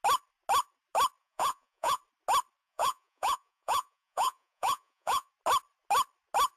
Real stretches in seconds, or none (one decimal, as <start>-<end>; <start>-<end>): 0.0-1.2; 2.0-2.6; 5.3-6.6